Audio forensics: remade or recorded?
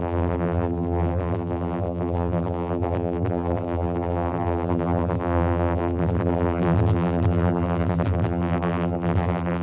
remade